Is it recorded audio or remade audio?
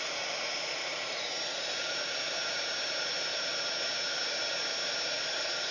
recorded